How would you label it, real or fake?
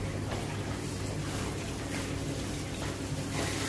real